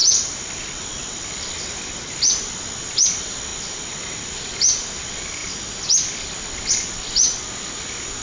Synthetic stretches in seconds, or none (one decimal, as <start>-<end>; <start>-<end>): none